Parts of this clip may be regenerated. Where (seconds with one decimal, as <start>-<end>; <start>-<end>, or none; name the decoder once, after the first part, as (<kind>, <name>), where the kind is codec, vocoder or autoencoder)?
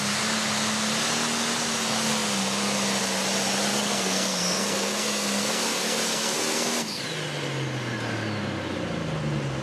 3.7-7.0 (codec, SNAC)